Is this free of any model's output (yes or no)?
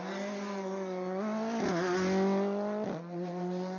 yes